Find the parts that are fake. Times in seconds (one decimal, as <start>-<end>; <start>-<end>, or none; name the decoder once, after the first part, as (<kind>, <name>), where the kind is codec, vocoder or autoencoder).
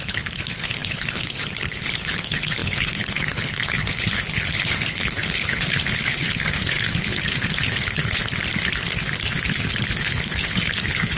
0.0-8.2 (codec, HILCodec); 10.0-11.2